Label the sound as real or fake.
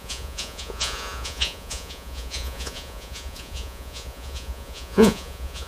fake